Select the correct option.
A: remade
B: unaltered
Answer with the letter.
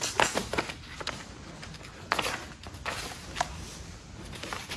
B